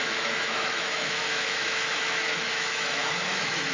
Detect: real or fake fake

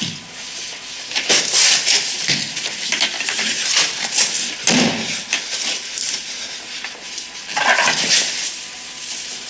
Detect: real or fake real